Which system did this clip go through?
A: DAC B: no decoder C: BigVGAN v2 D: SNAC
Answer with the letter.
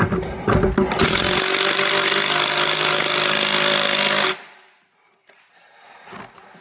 B